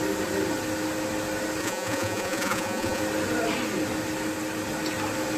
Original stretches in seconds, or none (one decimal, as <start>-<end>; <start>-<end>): 0.0-1.6; 3.0-5.4